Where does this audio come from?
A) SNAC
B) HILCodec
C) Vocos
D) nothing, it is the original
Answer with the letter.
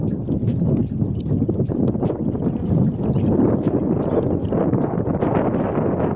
D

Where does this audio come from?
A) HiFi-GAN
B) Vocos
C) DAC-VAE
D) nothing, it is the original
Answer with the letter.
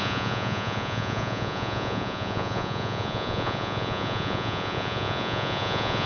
B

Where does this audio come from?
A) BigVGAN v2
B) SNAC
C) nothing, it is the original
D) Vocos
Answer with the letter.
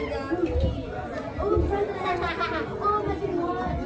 C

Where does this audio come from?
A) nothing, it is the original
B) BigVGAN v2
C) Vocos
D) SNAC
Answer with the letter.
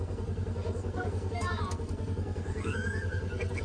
D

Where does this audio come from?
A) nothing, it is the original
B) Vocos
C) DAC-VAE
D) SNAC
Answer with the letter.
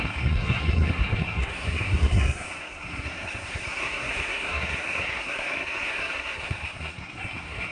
D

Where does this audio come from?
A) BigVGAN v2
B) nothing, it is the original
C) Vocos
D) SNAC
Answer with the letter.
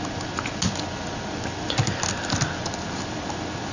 B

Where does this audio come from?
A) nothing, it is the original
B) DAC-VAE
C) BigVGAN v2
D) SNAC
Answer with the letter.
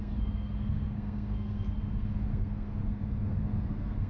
D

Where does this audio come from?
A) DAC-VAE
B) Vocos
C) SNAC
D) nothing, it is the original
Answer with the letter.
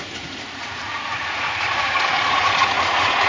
B